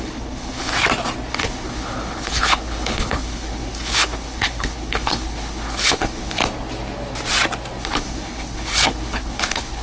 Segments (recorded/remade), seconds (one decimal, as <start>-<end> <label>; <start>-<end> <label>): 0.0-0.7 remade; 0.7-1.3 recorded; 1.3-6.4 remade; 6.4-7.8 recorded; 7.8-9.8 remade